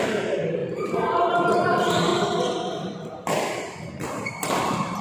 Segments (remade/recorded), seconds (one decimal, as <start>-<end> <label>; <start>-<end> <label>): 0.0-2.1 remade; 2.1-4.6 recorded; 4.6-5.0 remade